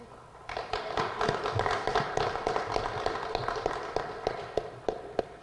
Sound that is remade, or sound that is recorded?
recorded